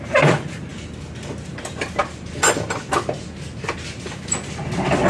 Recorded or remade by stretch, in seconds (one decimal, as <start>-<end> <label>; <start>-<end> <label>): 0.0-5.1 recorded